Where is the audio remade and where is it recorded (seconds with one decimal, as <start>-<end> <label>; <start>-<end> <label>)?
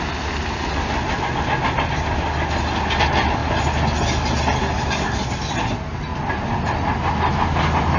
0.0-8.0 recorded